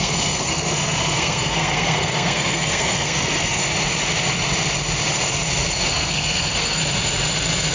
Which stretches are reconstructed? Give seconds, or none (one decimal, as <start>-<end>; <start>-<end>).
0.0-3.6; 5.9-6.8